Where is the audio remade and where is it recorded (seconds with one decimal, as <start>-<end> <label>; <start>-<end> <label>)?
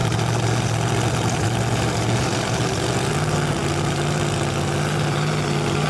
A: 0.0-5.9 recorded